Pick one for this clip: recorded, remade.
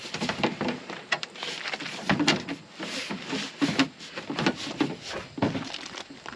remade